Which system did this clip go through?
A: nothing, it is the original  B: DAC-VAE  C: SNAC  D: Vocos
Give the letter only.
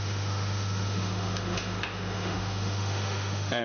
B